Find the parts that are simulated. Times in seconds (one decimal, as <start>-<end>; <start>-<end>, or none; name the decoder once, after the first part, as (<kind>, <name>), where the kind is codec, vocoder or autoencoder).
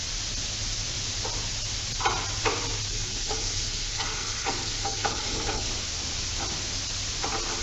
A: 2.9-5.7 (codec, SNAC)